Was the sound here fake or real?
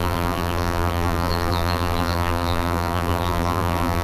fake